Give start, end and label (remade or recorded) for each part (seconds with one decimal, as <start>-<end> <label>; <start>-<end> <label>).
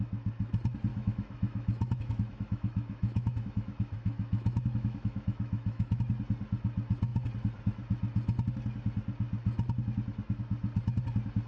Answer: 0.0-0.9 recorded; 0.9-6.0 remade; 6.0-11.5 recorded